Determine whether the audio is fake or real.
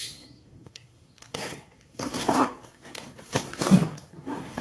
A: fake